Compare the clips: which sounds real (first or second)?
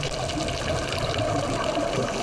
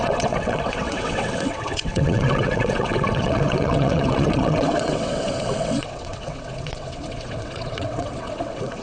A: first